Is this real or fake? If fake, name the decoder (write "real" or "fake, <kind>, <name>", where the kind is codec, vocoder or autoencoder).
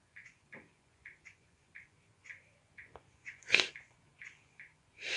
fake, vocoder, Vocos